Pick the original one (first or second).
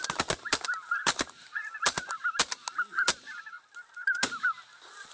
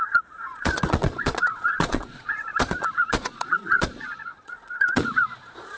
first